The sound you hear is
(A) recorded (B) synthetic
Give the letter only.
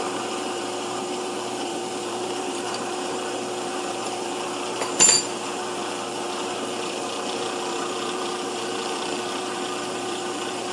B